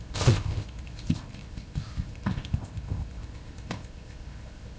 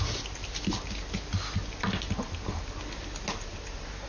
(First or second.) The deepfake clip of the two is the first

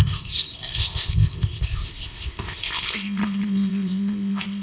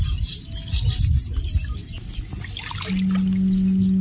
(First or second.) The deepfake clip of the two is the first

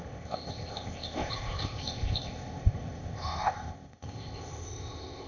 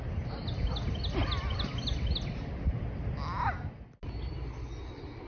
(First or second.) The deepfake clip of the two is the first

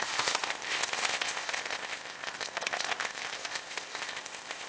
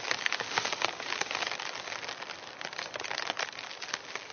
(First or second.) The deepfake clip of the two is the first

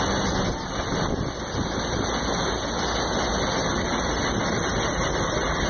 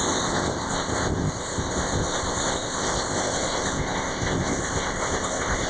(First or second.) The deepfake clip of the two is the second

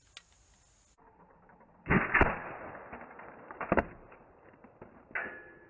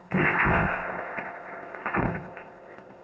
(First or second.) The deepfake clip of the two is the second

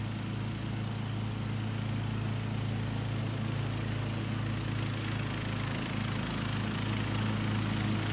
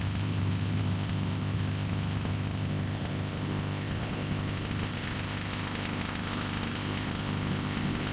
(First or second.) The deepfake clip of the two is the second